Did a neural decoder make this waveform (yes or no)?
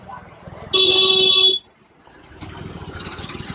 no